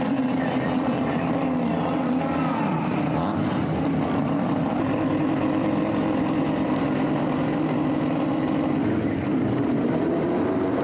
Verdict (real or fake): fake